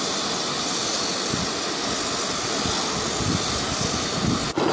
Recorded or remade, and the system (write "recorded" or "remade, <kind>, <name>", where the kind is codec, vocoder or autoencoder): recorded